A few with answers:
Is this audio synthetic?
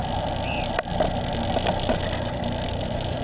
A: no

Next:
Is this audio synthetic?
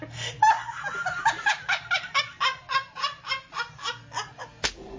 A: no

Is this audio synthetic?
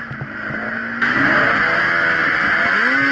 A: no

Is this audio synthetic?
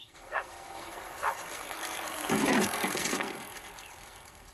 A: yes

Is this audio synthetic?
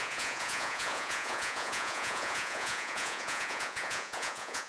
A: yes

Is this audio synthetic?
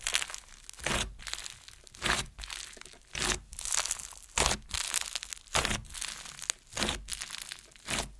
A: no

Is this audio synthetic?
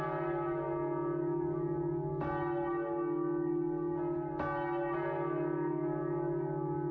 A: no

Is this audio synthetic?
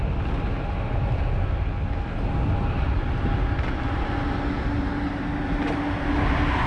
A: no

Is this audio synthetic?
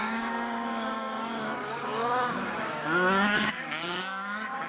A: yes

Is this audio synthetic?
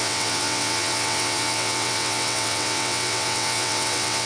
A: yes